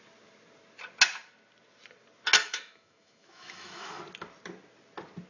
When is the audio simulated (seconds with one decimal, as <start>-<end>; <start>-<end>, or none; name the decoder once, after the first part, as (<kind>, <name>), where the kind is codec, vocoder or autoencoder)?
2.4-4.0 (autoencoder, DAC-VAE)